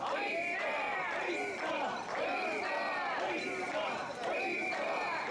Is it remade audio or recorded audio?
recorded